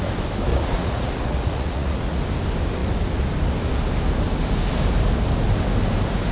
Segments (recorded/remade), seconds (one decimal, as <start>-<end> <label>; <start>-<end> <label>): 0.0-0.5 recorded; 0.5-2.2 remade; 2.2-6.3 recorded